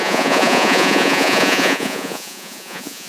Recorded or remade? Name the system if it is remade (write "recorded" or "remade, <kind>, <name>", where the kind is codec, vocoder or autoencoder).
remade, vocoder, Vocos